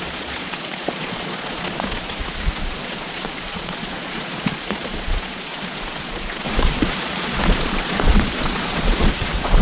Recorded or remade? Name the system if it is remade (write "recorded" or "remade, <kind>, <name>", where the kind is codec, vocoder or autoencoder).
remade, vocoder, Vocos